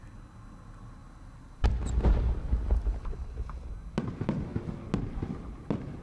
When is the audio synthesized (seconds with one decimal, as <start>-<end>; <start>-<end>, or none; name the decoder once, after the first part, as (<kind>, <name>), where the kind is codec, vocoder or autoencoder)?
none